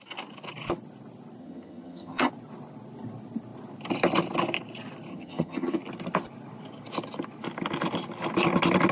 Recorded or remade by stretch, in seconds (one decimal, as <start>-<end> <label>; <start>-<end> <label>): 0.0-1.4 recorded; 1.4-2.3 remade; 2.3-5.1 recorded; 5.1-5.8 remade; 5.8-8.9 recorded